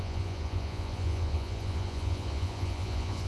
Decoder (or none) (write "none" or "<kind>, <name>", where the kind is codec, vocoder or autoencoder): vocoder, Vocos